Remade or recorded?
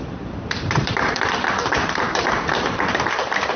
remade